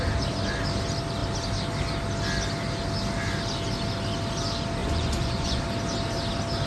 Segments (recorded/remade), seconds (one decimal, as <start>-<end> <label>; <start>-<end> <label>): 0.0-4.8 recorded; 4.8-5.6 remade; 5.6-6.7 recorded